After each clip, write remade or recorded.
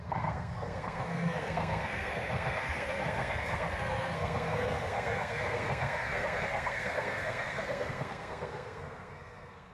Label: remade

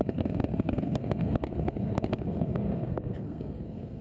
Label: remade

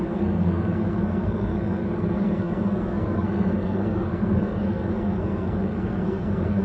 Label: remade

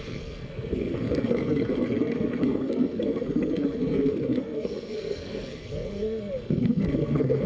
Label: remade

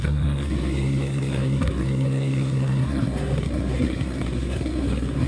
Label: remade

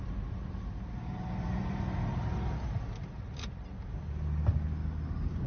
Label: recorded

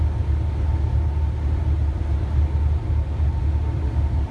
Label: recorded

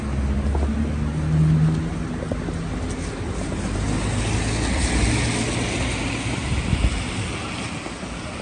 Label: recorded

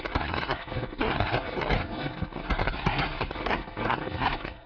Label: remade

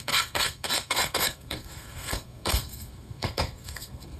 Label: remade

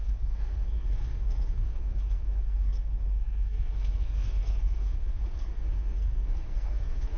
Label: remade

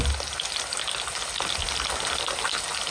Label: recorded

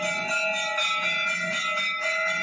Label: recorded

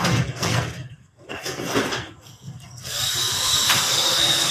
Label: remade